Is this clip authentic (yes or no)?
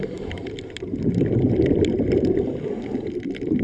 yes